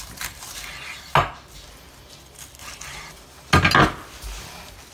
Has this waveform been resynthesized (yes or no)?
no